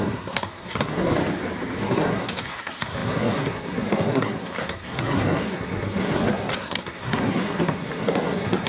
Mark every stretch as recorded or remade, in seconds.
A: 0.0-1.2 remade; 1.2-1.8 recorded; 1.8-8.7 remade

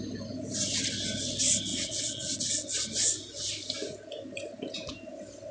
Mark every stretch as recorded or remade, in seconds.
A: 0.0-1.7 recorded; 1.7-2.4 remade; 2.4-5.5 recorded

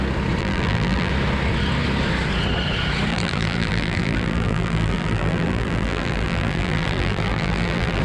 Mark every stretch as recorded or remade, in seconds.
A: 0.0-0.4 recorded; 0.4-1.1 remade; 1.1-3.1 recorded; 3.1-8.0 remade

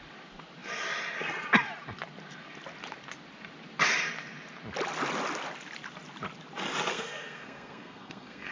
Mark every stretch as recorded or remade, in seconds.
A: 0.0-6.9 recorded; 6.9-8.5 remade

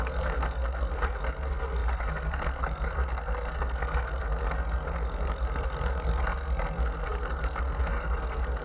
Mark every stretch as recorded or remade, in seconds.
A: 0.0-8.6 remade

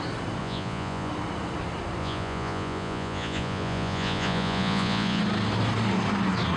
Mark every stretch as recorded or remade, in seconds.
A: 0.0-0.4 recorded; 0.4-1.1 remade; 1.1-2.0 recorded; 2.0-5.2 remade; 5.2-6.6 recorded